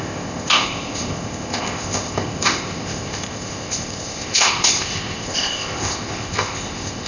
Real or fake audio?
fake